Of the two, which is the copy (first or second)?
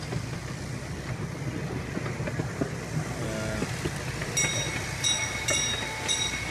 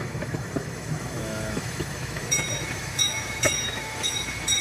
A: second